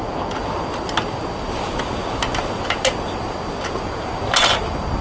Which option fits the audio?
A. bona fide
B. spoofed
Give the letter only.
A